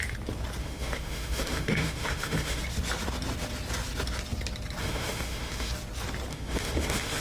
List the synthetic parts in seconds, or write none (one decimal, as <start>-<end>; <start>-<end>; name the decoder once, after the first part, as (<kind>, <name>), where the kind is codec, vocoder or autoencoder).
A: 0.6-2.6 (autoencoder, DAC-VAE); 4.8-5.7; 6.3-7.2